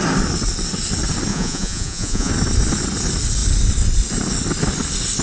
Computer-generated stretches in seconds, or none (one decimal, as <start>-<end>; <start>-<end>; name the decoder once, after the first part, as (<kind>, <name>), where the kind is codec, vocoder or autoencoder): 1.3-2.3 (vocoder, Vocos)